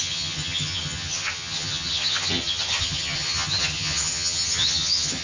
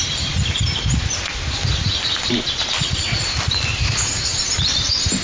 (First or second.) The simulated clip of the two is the first